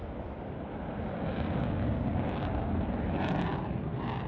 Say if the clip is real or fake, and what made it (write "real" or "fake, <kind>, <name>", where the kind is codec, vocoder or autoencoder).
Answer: real